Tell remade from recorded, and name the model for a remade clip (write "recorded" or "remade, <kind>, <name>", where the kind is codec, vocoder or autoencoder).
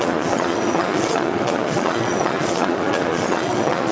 remade, vocoder, Vocos